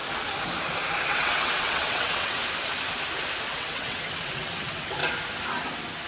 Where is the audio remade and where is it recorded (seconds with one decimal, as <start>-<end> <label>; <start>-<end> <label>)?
0.0-1.1 recorded; 1.1-2.4 remade; 2.4-3.5 recorded; 3.5-5.0 remade; 5.0-6.1 recorded